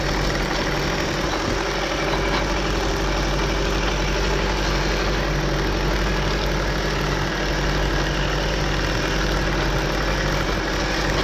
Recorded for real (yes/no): yes